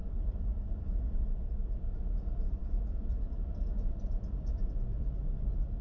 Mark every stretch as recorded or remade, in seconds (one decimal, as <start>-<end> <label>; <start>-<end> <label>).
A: 0.0-5.8 remade